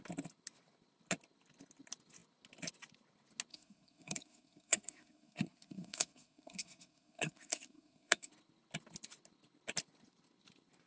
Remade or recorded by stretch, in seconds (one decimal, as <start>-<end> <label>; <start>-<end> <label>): 0.0-3.5 recorded; 3.5-8.3 remade; 8.3-10.9 recorded